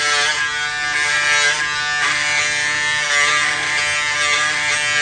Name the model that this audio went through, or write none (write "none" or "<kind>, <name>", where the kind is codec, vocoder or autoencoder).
none